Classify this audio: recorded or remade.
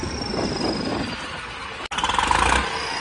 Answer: recorded